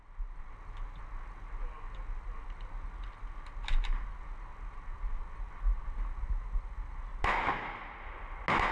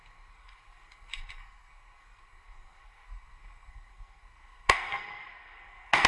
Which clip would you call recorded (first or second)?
first